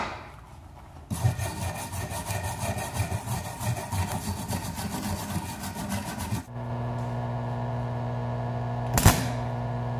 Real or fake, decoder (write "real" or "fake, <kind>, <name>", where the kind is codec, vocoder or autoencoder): fake, vocoder, BigVGAN v2